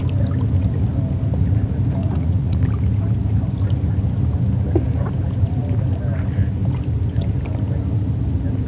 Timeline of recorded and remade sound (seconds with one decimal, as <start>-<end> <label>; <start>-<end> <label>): 0.0-2.0 recorded; 2.0-2.6 remade; 2.6-8.7 recorded